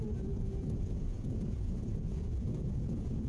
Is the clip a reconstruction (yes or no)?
yes